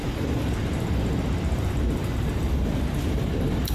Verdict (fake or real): fake